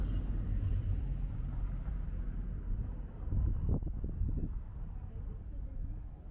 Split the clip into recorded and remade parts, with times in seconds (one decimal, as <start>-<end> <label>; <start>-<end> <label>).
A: 0.0-0.8 recorded; 0.8-2.8 remade; 2.8-6.3 recorded